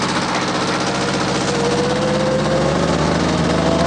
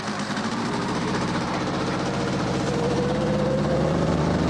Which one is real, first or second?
first